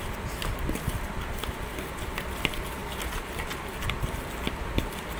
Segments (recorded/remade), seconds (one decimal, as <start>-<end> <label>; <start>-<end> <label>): 0.0-5.2 recorded